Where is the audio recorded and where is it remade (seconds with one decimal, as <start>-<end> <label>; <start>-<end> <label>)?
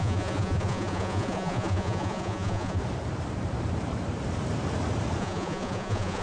0.0-2.8 remade; 2.8-5.2 recorded; 5.2-6.2 remade